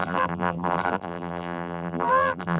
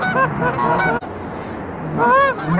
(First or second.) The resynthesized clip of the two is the first